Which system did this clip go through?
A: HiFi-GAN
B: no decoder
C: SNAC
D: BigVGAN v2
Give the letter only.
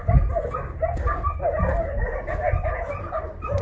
B